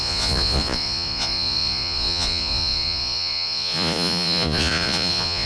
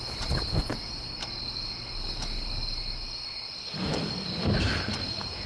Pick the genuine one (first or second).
second